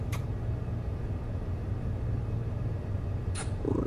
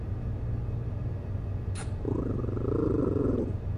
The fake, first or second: first